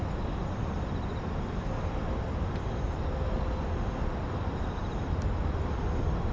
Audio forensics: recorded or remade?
recorded